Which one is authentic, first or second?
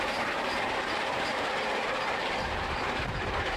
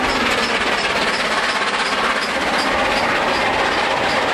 second